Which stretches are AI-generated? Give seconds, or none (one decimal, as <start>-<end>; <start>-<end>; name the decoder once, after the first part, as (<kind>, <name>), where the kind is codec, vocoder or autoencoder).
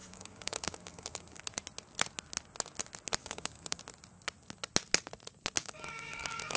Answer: 0.0-1.4 (codec, DAC); 3.2-3.8; 5.6-6.6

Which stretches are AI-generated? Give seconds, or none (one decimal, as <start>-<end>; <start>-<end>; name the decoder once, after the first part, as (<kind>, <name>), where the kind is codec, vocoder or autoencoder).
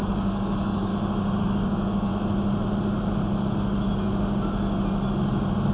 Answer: 0.0-0.9 (codec, DAC); 1.4-2.1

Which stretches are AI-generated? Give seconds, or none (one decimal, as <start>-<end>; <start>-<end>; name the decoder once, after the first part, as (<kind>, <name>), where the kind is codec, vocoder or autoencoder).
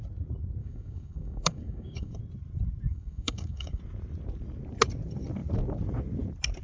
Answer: 0.6-2.2 (codec, DAC); 2.9-3.8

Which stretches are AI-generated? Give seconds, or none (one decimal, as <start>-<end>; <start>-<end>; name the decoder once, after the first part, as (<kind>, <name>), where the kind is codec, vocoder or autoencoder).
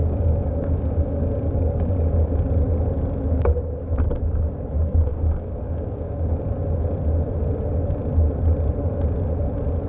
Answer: 0.0-2.4 (codec, DAC); 5.1-6.4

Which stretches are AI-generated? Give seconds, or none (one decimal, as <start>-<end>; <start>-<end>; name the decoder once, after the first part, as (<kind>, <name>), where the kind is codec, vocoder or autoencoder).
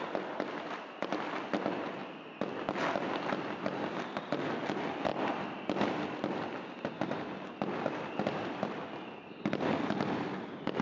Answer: none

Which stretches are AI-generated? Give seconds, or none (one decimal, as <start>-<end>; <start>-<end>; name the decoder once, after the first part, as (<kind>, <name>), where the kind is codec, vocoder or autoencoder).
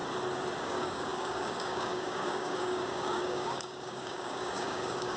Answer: 0.6-5.2 (codec, DAC)